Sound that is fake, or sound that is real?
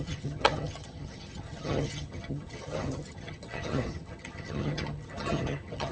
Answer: fake